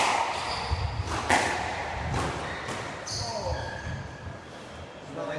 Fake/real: real